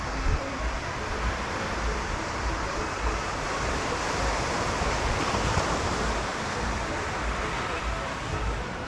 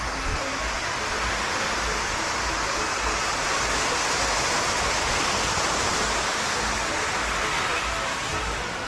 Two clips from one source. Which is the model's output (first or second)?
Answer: first